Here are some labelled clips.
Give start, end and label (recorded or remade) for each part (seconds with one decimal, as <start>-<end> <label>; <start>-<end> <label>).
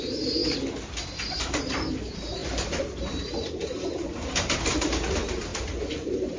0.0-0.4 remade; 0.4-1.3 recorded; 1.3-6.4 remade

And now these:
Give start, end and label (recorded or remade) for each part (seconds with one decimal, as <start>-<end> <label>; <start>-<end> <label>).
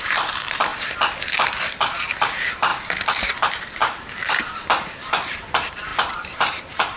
0.0-0.7 remade; 0.7-2.0 recorded; 2.0-2.7 remade; 2.7-3.3 recorded; 3.3-7.0 remade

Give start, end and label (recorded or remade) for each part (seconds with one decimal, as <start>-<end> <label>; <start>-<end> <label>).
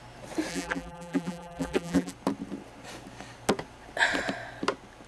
0.0-0.5 recorded; 0.5-2.1 remade; 2.1-5.1 recorded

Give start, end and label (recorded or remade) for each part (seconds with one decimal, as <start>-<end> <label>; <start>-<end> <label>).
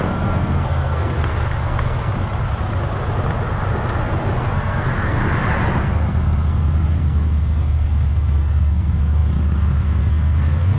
0.0-2.1 remade; 2.1-4.4 recorded; 4.4-5.2 remade; 5.2-5.8 recorded; 5.8-10.8 remade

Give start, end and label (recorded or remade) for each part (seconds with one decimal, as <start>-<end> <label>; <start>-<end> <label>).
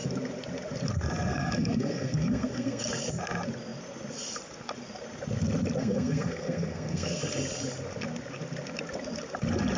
0.0-1.3 recorded; 1.3-2.8 remade; 2.8-5.8 recorded; 5.8-7.2 remade; 7.2-9.8 recorded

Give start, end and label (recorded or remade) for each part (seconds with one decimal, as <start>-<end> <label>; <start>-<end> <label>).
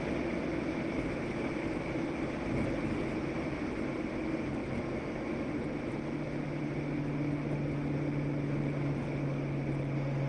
0.0-10.3 recorded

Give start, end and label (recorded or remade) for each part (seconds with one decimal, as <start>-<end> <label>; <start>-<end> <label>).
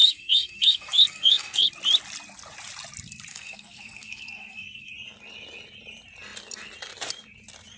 0.0-1.7 remade; 1.7-3.3 recorded; 3.3-4.9 remade; 4.9-7.8 recorded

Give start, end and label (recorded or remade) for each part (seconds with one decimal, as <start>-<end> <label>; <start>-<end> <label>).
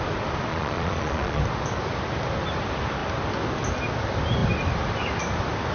0.0-0.5 recorded; 0.5-1.4 remade; 1.4-5.7 recorded